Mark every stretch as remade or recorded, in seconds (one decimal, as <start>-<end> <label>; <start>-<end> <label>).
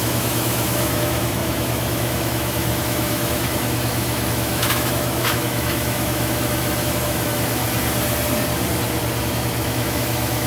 0.0-7.6 remade; 7.6-9.2 recorded; 9.2-10.5 remade